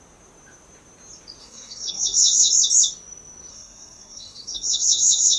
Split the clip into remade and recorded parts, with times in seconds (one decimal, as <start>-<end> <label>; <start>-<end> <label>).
0.0-1.4 recorded; 1.4-2.5 remade; 2.5-3.5 recorded; 3.5-5.4 remade